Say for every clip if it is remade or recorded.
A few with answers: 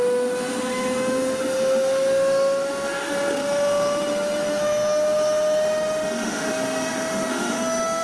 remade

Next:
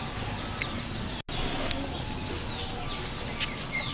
recorded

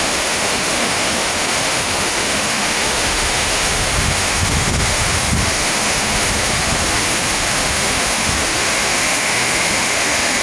remade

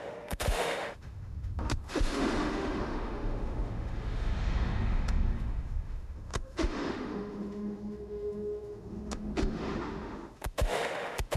remade